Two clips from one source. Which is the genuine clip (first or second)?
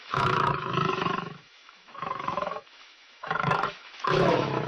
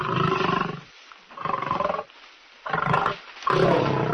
second